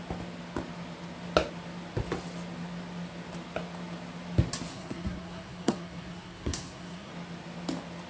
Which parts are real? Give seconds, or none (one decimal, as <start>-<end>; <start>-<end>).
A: 0.0-4.7; 7.1-8.1